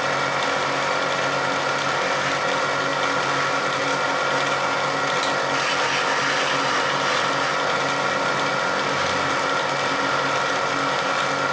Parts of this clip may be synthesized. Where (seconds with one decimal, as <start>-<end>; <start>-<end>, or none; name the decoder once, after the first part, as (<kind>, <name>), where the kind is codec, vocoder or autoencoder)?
none